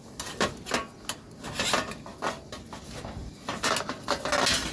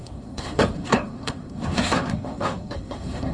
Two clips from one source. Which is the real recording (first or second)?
first